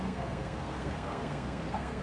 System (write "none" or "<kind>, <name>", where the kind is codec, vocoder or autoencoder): codec, SNAC